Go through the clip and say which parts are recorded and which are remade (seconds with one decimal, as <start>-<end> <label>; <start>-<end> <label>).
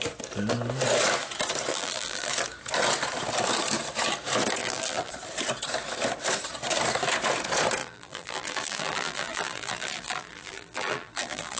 0.0-1.7 recorded; 1.7-2.3 remade; 2.3-4.6 recorded; 4.6-5.1 remade; 5.1-7.8 recorded; 7.8-11.6 remade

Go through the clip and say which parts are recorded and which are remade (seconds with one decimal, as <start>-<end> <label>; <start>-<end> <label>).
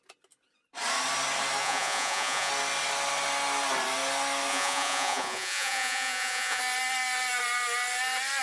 0.0-1.6 recorded; 1.6-2.5 remade; 2.5-4.5 recorded; 4.5-6.6 remade; 6.6-8.4 recorded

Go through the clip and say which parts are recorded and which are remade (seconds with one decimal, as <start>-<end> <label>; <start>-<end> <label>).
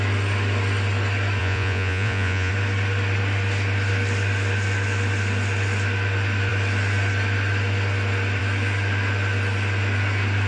0.0-1.4 recorded; 1.4-2.5 remade; 2.5-10.5 recorded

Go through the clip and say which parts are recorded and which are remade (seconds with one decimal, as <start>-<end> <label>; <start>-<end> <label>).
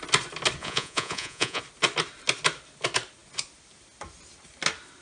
0.0-0.6 recorded; 0.6-1.6 remade; 1.6-5.0 recorded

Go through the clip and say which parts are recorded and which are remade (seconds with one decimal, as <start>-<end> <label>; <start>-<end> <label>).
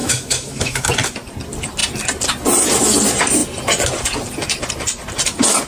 0.0-0.9 remade; 0.9-5.7 recorded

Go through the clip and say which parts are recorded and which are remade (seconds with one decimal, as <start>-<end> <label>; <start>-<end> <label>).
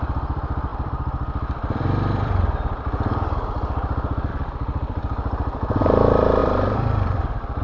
0.0-7.6 remade